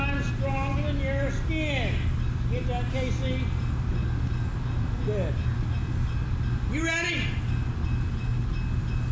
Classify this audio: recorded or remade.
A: recorded